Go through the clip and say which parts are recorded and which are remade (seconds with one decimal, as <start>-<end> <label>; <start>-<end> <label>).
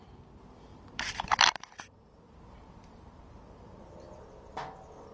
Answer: 0.0-0.7 recorded; 0.7-3.8 remade; 3.8-5.1 recorded